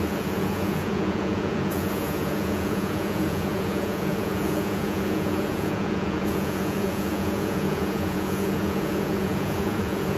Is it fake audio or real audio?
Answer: fake